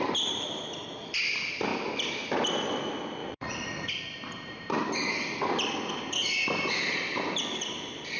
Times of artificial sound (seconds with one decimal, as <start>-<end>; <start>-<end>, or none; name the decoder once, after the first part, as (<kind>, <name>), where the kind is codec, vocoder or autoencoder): 3.2-3.9 (vocoder, Vocos)

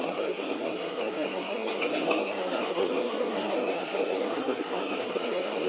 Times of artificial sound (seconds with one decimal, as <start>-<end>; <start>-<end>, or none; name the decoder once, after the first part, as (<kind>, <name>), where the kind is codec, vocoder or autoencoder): 0.0-5.7 (codec, SNAC)

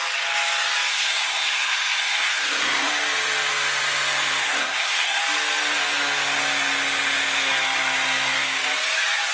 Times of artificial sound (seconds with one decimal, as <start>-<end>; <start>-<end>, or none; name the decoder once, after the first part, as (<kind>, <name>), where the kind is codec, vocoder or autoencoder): 0.9-2.9 (codec, SNAC); 4.4-5.2

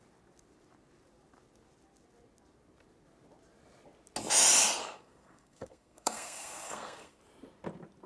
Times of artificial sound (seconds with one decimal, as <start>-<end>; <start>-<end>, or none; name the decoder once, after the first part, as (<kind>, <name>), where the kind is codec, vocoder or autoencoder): 4.8-7.2 (codec, SNAC)

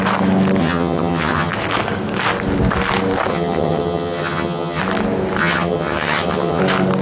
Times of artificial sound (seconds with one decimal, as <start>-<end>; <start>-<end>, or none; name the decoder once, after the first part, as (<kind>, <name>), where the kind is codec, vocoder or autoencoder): 0.6-1.5 (vocoder, HiFi-GAN); 3.3-4.8; 5.4-6.6

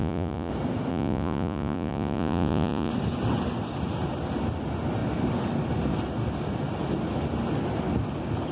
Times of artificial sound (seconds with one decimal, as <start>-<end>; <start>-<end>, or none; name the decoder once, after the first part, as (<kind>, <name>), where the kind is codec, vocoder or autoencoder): 0.0-0.5 (vocoder, Vocos); 0.9-2.9

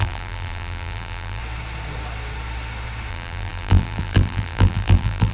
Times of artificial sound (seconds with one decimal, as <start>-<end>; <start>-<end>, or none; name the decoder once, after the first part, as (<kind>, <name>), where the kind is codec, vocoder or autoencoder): 0.0-1.4 (vocoder, BigVGAN v2); 3.1-5.3